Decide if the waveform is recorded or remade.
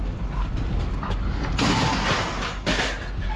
recorded